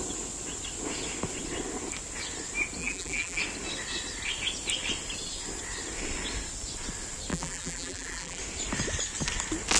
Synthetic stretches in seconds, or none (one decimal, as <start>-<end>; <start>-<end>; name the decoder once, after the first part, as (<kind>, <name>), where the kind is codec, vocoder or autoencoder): 2.8-3.4 (vocoder, BigVGAN v2); 7.3-8.4